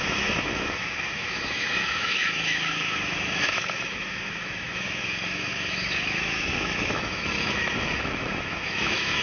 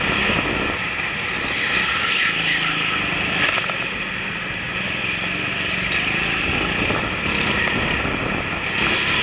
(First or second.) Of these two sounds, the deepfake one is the first